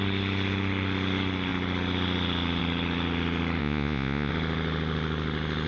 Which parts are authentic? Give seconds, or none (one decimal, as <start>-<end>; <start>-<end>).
0.0-3.6; 4.3-5.7